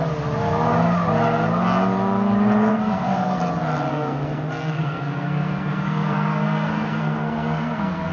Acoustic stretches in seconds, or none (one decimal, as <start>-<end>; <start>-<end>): 0.0-2.7; 3.4-3.9